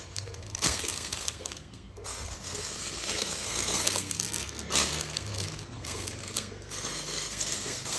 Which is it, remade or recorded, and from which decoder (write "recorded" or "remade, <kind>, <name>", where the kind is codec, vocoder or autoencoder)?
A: remade, codec, SNAC